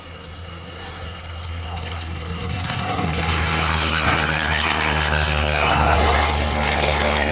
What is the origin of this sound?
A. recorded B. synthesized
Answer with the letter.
B